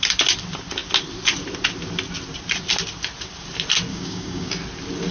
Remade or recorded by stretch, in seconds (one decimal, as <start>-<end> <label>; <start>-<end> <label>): 0.0-3.9 recorded; 3.9-4.5 remade; 4.5-5.1 recorded